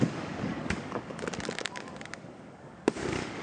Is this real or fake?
fake